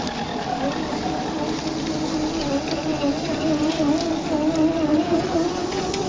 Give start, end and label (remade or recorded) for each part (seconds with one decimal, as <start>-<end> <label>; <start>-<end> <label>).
0.0-2.9 recorded; 2.9-3.7 remade; 3.7-4.9 recorded; 4.9-6.1 remade